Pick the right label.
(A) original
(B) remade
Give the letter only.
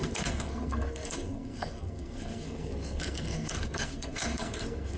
B